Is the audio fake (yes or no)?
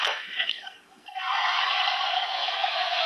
yes